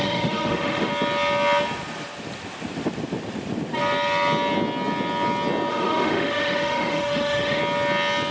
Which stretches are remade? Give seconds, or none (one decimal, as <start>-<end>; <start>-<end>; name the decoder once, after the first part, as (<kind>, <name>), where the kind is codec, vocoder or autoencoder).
0.0-0.9 (autoencoder, DAC-VAE); 5.7-7.6